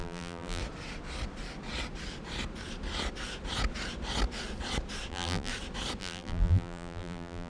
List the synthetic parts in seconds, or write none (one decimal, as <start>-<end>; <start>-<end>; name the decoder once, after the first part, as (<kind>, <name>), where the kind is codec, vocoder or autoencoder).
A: 0.0-0.6 (vocoder, BigVGAN v2); 5.1-5.5; 6.0-7.5